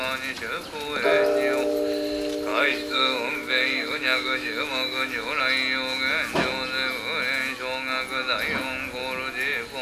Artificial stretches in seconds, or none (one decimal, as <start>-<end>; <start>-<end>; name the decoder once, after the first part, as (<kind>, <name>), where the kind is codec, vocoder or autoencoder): 2.5-5.4 (autoencoder, DAC-VAE)